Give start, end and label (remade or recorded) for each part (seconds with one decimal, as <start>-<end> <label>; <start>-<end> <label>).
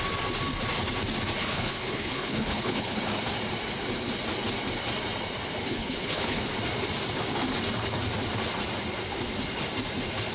0.0-1.4 recorded; 1.4-3.0 remade; 3.0-5.6 recorded; 5.6-6.4 remade; 6.4-10.3 recorded